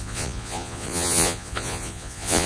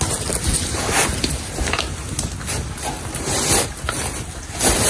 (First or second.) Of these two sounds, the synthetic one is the first